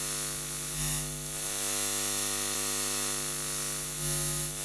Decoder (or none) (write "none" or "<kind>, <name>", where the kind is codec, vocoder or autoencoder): autoencoder, DAC-VAE